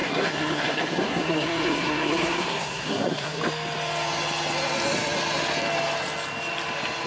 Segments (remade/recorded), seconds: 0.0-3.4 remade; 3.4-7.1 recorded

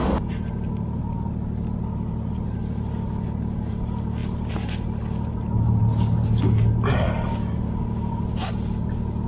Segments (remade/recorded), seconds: 0.0-9.3 recorded